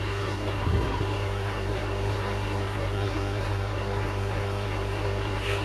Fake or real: fake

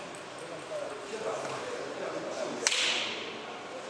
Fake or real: real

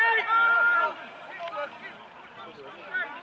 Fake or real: real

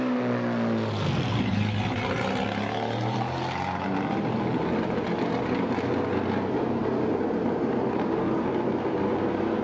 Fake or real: real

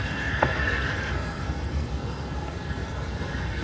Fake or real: fake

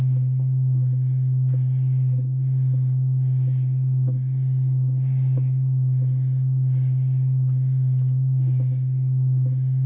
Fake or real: real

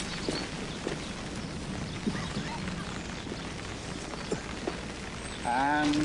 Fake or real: real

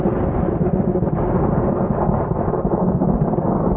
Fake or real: real